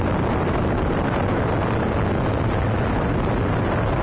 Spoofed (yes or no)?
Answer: no